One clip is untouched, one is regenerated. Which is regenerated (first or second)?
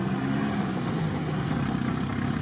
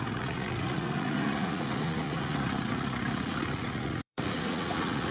second